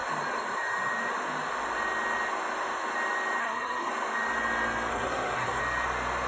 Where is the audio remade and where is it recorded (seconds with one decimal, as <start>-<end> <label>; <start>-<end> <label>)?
0.0-3.4 recorded; 3.4-3.9 remade; 3.9-4.9 recorded; 4.9-5.6 remade; 5.6-6.3 recorded

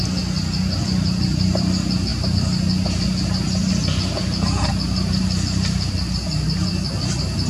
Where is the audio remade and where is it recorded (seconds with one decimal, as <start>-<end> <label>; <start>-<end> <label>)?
0.0-5.2 recorded; 5.2-6.3 remade; 6.3-7.5 recorded

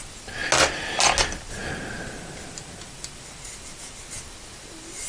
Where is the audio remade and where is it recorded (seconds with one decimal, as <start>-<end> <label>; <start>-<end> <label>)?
0.0-5.1 recorded

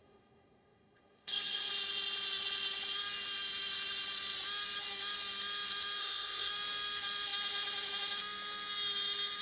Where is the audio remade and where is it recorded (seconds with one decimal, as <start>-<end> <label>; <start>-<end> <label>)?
0.0-1.7 remade; 1.7-6.0 recorded; 6.0-6.5 remade; 6.5-9.4 recorded

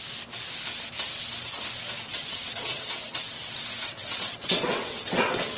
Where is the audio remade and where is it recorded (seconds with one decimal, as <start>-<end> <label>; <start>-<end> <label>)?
0.0-2.1 recorded; 2.1-5.6 remade

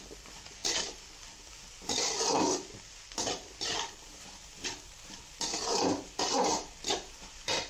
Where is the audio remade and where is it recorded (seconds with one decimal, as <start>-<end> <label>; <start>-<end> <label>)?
0.0-7.7 remade